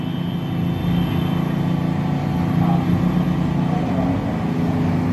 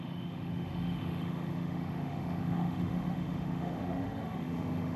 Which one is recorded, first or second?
first